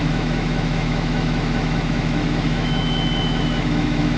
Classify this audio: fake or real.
fake